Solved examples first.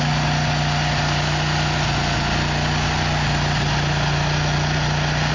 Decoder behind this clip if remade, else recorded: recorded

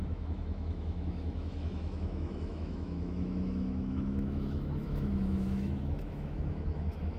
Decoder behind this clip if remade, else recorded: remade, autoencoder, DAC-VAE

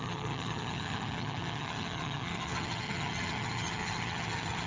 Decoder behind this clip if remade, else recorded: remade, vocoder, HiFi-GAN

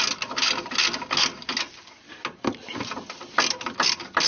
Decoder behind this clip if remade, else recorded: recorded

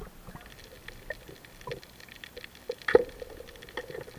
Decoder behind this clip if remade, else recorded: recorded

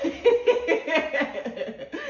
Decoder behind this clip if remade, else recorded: recorded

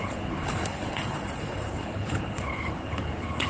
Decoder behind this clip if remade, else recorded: remade, codec, HILCodec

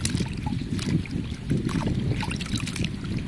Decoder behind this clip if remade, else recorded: recorded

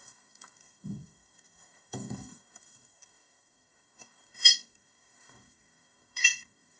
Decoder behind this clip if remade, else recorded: remade, codec, DAC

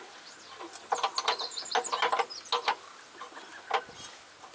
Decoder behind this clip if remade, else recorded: recorded